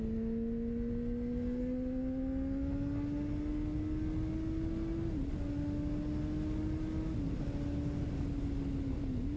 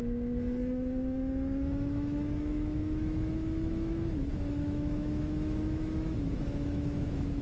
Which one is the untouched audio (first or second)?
first